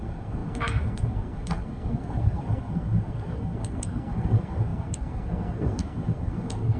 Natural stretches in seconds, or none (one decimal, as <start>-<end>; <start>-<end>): none